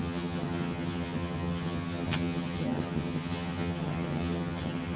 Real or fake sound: fake